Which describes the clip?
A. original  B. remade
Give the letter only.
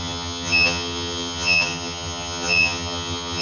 B